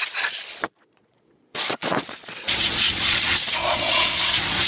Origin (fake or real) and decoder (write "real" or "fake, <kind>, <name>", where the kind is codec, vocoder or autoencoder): fake, vocoder, Vocos